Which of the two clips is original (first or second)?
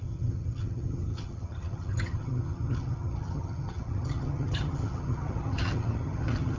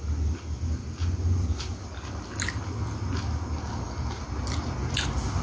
second